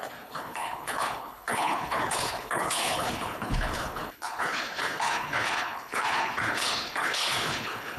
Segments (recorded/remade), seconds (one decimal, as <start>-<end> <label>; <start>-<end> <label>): 0.0-8.0 remade